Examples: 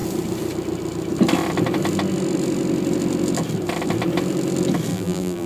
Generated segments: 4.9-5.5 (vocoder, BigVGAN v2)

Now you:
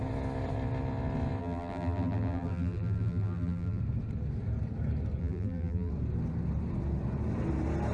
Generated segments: 1.4-3.8 (vocoder, BigVGAN v2); 5.2-5.9

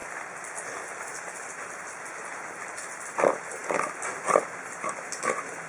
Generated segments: none